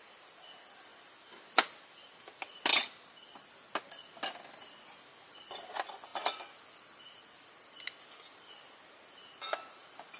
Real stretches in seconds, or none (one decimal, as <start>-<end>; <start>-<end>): 0.0-10.2